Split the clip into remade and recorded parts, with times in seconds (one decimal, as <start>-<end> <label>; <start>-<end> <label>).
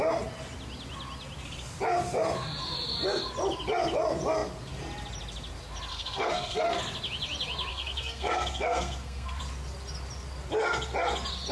0.0-5.9 recorded; 5.9-6.8 remade; 6.8-7.7 recorded; 7.7-9.4 remade; 9.4-11.5 recorded